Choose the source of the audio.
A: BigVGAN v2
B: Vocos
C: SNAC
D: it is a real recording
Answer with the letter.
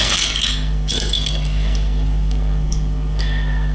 C